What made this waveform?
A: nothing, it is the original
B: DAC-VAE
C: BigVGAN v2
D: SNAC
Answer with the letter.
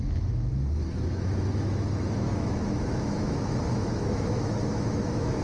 B